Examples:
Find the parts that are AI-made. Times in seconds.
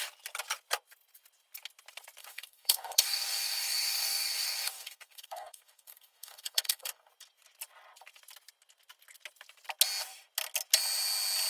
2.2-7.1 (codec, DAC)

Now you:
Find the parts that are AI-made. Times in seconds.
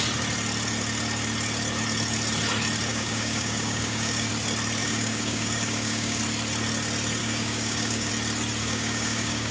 2.9-4.3 (codec, DAC); 4.8-6.2; 7.2-8.1; 8.6-9.5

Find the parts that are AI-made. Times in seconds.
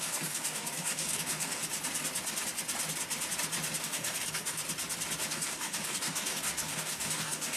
0.0-1.6 (codec, DAC); 3.8-4.6; 5.3-7.6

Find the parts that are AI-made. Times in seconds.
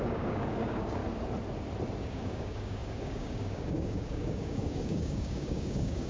0.0-1.0 (codec, DAC); 2.0-6.1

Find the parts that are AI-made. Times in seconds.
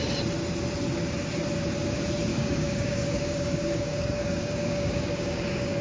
2.3-5.8 (codec, DAC)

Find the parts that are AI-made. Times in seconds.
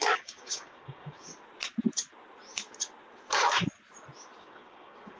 0.0-1.3 (codec, DAC); 4.4-5.2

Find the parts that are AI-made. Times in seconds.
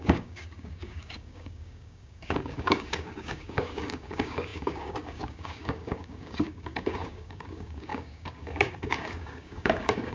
0.0-10.1 (codec, DAC)